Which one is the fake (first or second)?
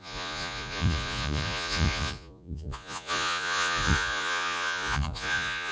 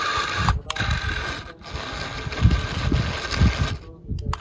first